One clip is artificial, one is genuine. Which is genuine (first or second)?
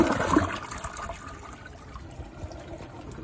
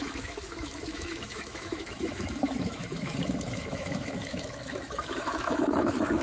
first